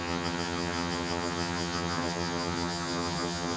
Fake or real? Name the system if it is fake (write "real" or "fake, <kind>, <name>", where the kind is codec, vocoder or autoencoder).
fake, vocoder, HiFi-GAN